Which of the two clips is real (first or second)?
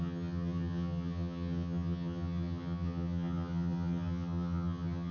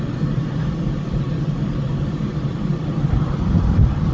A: second